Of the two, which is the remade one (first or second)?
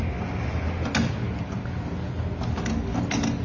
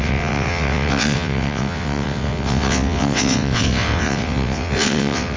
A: second